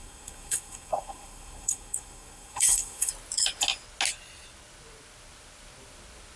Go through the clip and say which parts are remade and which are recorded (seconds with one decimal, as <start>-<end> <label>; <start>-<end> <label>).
0.0-3.1 remade; 3.1-6.4 recorded